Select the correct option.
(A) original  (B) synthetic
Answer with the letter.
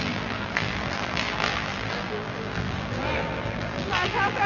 B